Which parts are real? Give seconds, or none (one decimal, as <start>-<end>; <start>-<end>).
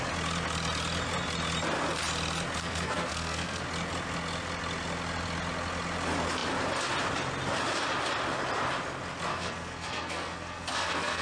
0.0-2.6; 3.6-9.3